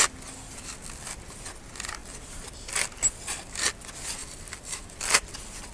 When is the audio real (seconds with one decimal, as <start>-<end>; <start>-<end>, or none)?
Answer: 0.0-2.0; 2.7-4.2; 5.3-5.7